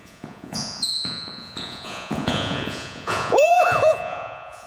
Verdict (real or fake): fake